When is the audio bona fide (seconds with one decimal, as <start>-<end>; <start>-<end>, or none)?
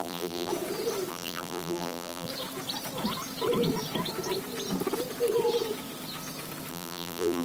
0.5-1.1; 2.3-6.7